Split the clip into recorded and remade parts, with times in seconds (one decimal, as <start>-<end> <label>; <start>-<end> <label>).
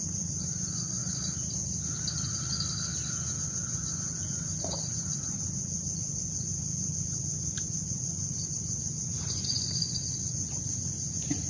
0.0-1.0 remade; 1.0-3.4 recorded; 3.4-11.5 remade